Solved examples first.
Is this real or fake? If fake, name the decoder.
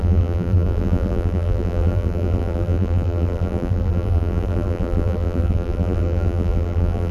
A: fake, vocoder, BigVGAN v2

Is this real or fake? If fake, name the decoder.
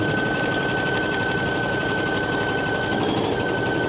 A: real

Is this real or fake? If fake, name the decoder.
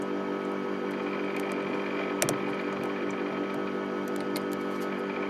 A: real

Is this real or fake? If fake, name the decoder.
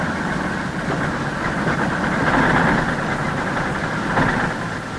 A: real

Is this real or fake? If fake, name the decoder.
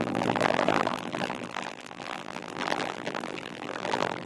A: fake, vocoder, BigVGAN v2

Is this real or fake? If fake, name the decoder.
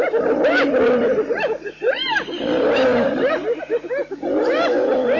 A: fake, vocoder, BigVGAN v2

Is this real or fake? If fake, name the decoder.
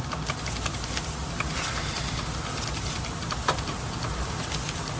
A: real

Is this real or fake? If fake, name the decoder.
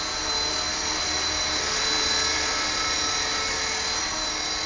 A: real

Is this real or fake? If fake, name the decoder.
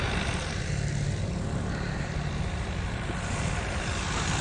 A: fake, vocoder, BigVGAN v2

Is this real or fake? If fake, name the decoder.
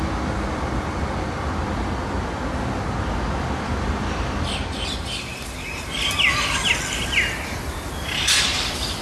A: real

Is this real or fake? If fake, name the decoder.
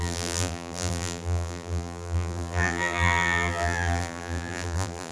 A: fake, vocoder, BigVGAN v2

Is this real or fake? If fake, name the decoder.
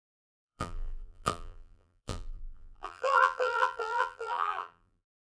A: fake, vocoder, BigVGAN v2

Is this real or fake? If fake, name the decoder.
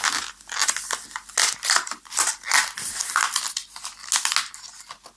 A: real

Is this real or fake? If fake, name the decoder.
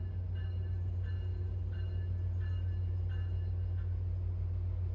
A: real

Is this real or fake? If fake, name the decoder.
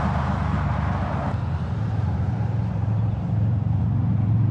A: fake, vocoder, BigVGAN v2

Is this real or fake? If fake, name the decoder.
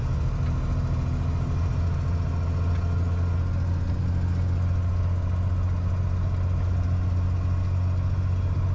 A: real